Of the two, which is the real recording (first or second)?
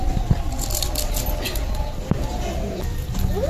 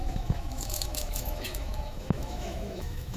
first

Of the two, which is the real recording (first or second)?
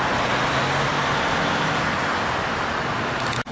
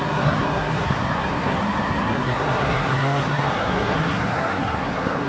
first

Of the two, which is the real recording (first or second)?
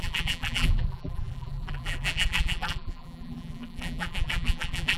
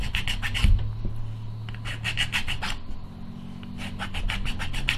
second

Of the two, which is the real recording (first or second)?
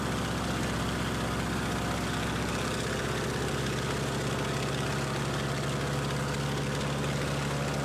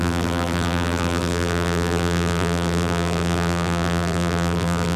first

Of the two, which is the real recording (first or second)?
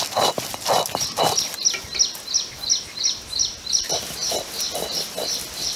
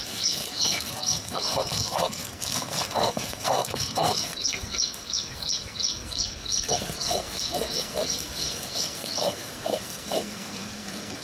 first